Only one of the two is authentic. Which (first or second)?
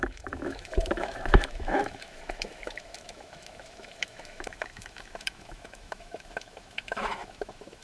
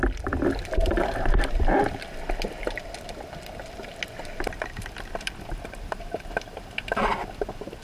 second